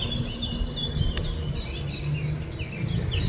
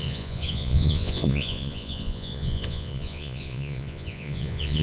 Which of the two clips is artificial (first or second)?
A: second